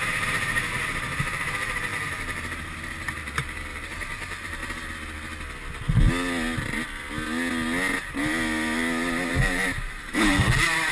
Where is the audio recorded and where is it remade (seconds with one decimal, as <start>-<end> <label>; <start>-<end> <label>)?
0.0-4.6 remade; 4.6-9.3 recorded; 9.3-10.9 remade